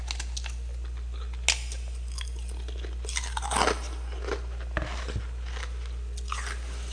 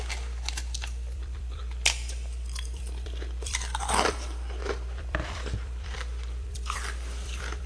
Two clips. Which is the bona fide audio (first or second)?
first